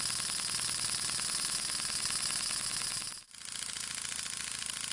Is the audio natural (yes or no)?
yes